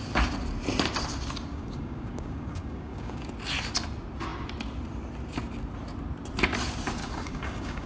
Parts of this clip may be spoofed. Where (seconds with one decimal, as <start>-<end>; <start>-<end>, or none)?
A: 1.5-3.3; 7.0-7.9